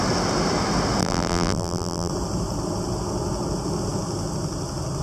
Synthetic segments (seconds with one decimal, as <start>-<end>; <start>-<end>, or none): 1.0-2.1